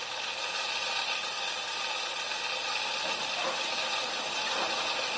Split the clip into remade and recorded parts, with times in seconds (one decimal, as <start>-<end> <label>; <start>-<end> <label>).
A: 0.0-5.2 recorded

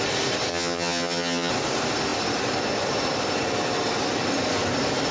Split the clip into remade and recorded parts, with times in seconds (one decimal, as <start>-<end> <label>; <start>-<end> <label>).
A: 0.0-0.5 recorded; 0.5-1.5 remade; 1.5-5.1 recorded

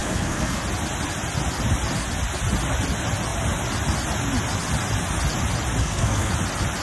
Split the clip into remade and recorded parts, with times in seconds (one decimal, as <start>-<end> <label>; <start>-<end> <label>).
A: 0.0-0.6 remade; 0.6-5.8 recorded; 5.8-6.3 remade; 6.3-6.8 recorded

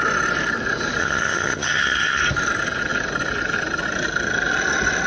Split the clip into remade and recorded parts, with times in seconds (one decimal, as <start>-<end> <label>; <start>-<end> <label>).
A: 0.0-1.0 recorded; 1.0-2.2 remade; 2.2-5.1 recorded